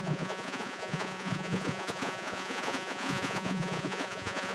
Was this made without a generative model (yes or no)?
no